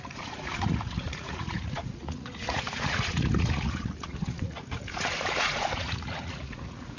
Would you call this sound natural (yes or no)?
no